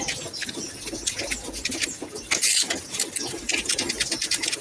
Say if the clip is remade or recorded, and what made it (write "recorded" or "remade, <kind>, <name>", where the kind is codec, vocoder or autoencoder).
recorded